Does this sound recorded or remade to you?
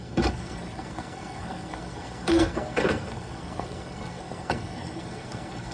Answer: remade